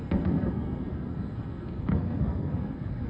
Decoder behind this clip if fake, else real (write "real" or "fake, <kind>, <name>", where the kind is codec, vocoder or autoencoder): fake, codec, SNAC